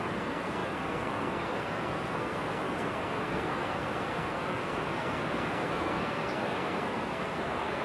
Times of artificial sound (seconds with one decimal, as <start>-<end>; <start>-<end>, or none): 0.0-7.8